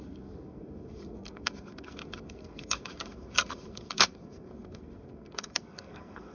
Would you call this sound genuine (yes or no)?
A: no